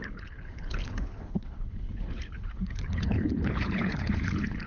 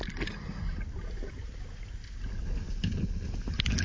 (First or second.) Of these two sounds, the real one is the second